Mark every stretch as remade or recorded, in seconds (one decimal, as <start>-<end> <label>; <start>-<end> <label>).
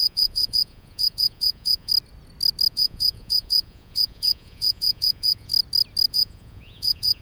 0.0-1.9 remade; 1.9-2.7 recorded; 2.7-5.5 remade; 5.5-6.1 recorded; 6.1-7.2 remade